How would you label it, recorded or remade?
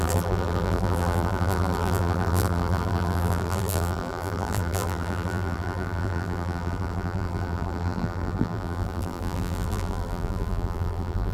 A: remade